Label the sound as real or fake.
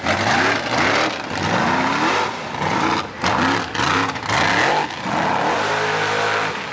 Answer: real